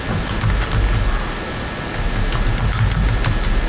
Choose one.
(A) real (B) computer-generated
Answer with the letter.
A